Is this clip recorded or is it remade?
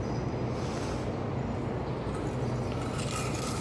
recorded